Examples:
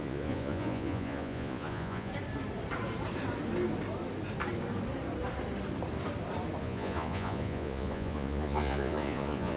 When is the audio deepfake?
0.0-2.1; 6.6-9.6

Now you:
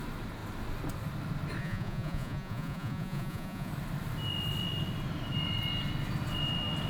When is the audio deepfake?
1.6-3.7

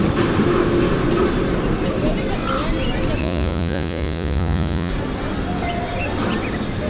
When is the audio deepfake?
3.2-4.9

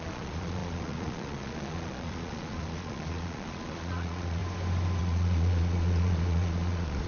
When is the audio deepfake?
0.0-4.4; 5.0-7.1

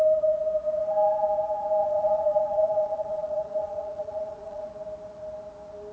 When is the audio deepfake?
1.8-4.7

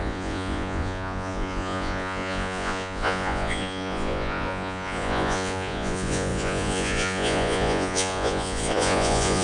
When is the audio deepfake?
0.0-9.4

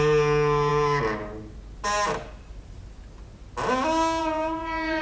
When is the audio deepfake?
4.2-5.0